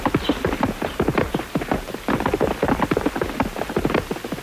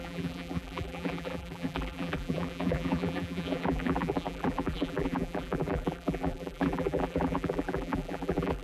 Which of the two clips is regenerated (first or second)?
second